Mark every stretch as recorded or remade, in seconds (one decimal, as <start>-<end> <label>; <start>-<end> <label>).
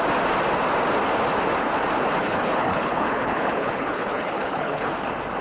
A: 0.0-2.2 recorded; 2.2-4.9 remade; 4.9-5.4 recorded